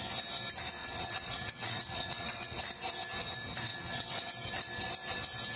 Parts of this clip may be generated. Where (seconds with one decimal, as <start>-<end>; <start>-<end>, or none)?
0.8-2.6; 3.7-4.3